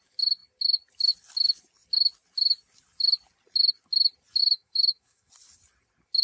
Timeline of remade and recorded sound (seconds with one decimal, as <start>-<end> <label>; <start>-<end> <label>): 0.0-4.4 recorded; 4.4-5.3 remade; 5.3-6.2 recorded